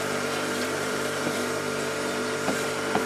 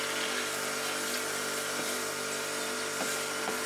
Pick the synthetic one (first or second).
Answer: first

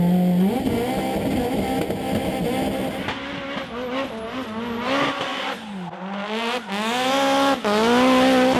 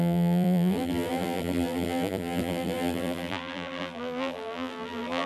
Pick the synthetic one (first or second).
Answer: second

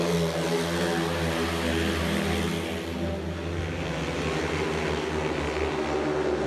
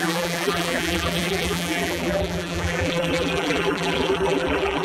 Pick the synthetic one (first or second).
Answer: second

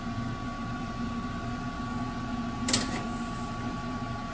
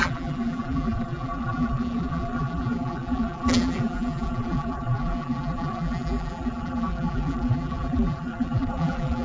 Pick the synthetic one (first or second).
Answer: second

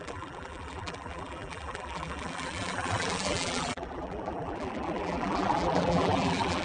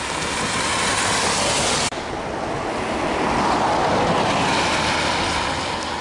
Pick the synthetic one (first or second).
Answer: first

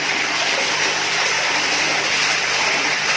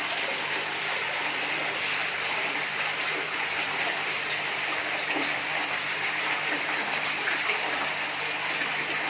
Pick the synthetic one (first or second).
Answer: first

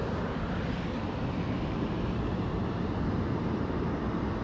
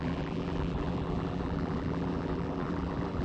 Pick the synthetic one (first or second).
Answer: second